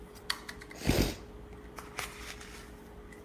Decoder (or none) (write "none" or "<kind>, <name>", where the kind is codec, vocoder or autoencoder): none